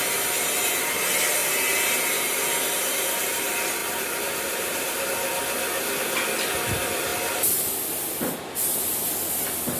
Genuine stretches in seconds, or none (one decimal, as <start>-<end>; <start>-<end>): 0.0-1.4; 2.1-3.8; 5.0-9.8